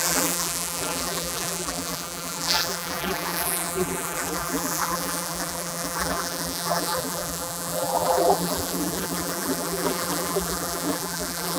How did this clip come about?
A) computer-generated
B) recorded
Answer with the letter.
A